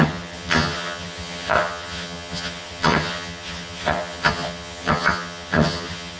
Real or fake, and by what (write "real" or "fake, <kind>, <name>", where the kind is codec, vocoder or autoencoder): fake, vocoder, HiFi-GAN